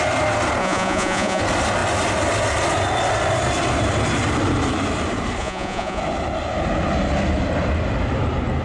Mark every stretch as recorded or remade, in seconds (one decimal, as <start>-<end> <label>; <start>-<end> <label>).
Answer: 0.0-0.6 recorded; 0.6-1.4 remade; 1.4-5.4 recorded; 5.4-6.0 remade; 6.0-8.6 recorded